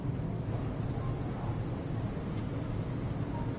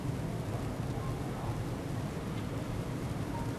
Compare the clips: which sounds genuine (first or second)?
first